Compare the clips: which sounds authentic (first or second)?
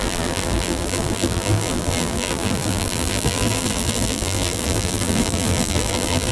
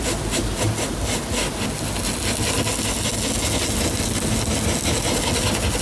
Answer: second